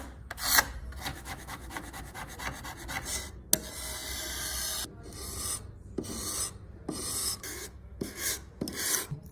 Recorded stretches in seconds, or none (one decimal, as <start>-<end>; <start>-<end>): 0.0-1.1; 2.0-7.2; 8.5-9.3